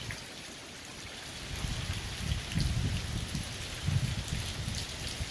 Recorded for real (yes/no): yes